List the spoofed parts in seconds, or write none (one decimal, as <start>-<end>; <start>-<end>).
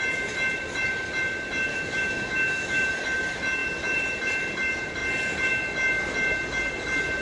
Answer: 1.7-2.9